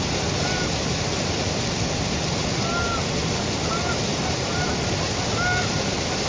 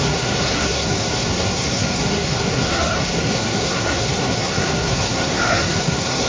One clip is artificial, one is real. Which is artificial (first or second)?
second